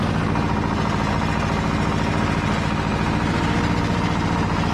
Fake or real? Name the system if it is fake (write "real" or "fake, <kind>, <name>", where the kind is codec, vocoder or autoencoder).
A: real